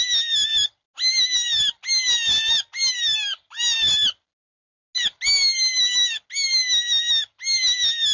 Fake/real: real